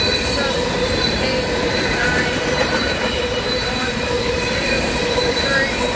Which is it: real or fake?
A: fake